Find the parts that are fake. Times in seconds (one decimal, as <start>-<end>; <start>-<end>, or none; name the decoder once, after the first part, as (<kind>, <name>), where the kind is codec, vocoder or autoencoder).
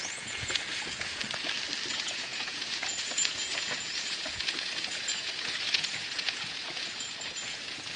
0.0-1.2 (vocoder, Vocos); 1.9-8.0